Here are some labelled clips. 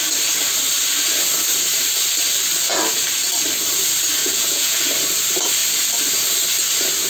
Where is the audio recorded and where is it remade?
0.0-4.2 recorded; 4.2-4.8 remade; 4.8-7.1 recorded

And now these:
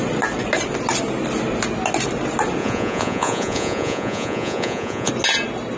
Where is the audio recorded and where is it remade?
0.0-2.6 recorded; 2.6-5.1 remade; 5.1-5.8 recorded

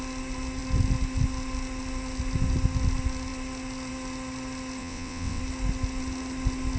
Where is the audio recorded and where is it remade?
0.0-4.8 recorded; 4.8-5.4 remade; 5.4-6.8 recorded

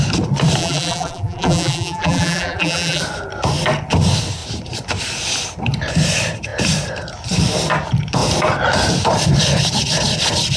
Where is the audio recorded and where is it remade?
0.0-0.6 recorded; 0.6-3.0 remade; 3.0-10.6 recorded